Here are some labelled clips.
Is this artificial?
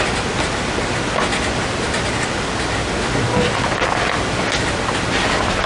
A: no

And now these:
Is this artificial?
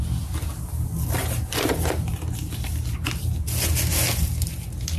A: no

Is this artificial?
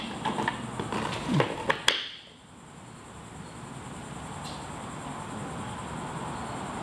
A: no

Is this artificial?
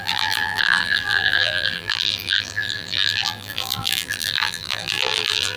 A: yes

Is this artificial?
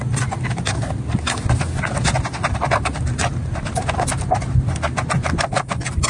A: no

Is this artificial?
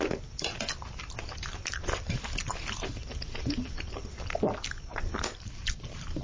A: no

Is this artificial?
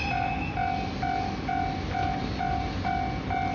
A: no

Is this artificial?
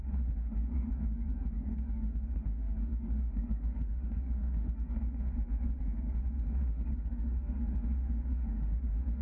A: yes